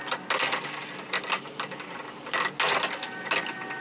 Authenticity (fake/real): real